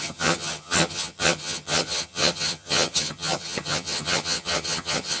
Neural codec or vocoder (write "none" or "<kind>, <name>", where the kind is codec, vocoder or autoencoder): vocoder, HiFi-GAN